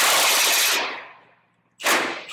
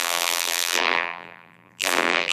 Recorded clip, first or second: first